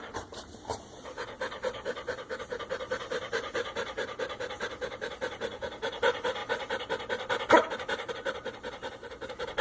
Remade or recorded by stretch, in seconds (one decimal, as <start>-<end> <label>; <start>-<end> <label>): 0.0-9.6 recorded